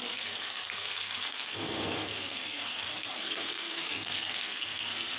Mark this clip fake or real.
fake